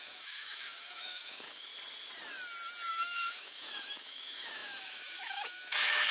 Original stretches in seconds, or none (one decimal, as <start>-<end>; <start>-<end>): 1.7-2.9